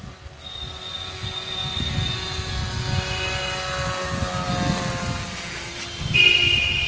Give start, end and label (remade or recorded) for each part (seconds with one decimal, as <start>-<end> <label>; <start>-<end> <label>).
0.0-6.9 recorded